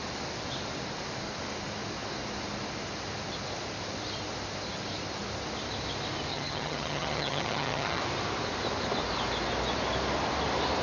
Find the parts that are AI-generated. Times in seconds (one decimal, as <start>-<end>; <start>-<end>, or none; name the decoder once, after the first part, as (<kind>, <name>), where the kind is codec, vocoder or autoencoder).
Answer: 6.3-8.0 (vocoder, HiFi-GAN)